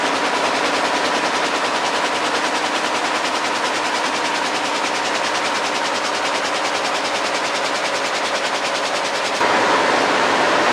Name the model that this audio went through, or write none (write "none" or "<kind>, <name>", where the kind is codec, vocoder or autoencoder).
none